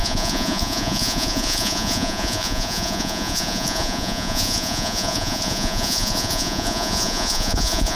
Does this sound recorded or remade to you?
remade